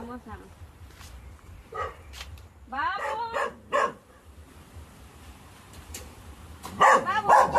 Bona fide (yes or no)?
no